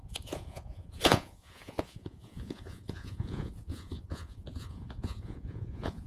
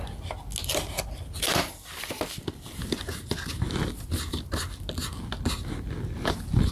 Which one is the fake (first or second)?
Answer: first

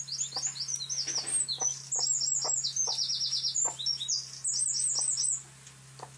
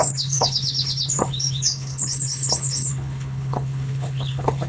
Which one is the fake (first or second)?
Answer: second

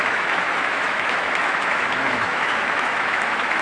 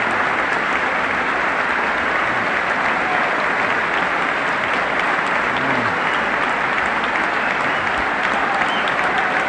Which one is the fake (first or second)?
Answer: first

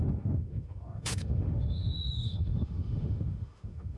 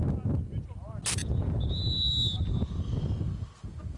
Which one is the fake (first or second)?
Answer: first